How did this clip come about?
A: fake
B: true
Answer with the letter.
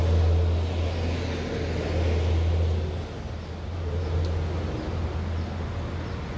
B